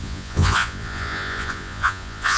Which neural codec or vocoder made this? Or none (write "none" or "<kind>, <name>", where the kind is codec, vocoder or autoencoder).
vocoder, Vocos